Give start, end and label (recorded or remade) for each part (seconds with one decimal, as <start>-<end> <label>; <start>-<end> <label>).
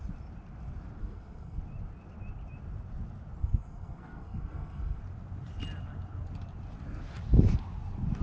0.0-1.0 recorded; 1.0-1.6 remade; 1.6-3.4 recorded; 3.4-5.0 remade; 5.0-8.2 recorded